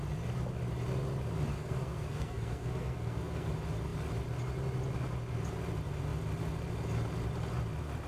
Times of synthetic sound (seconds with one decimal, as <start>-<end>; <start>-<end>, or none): 1.5-3.5